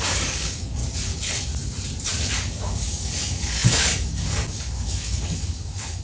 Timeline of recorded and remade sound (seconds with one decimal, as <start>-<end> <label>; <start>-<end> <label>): 0.0-0.8 remade; 0.8-2.3 recorded; 2.3-6.0 remade